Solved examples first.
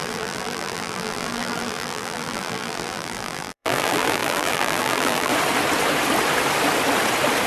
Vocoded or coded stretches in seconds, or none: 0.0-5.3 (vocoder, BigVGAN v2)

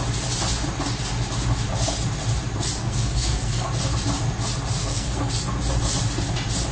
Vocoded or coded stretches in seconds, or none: 2.8-3.7 (codec, SNAC); 4.8-5.3

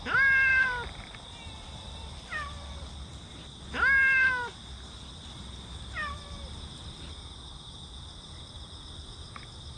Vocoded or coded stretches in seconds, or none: 0.5-3.6 (vocoder, BigVGAN v2)

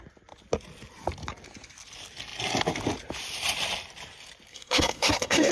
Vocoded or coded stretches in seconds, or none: 4.5-5.5 (codec, SNAC)

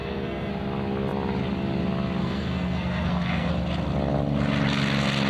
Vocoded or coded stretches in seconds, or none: 0.0-0.5 (codec, SNAC); 2.2-3.5

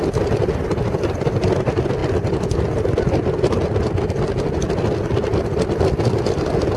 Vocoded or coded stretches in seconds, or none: none

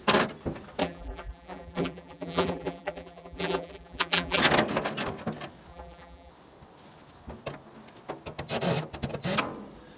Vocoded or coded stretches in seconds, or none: 0.8-4.4 (vocoder, BigVGAN v2); 5.7-6.3

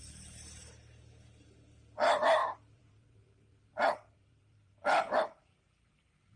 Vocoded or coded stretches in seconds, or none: 2.4-6.4 (vocoder, BigVGAN v2)